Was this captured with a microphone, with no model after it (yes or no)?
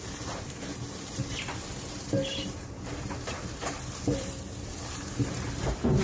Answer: no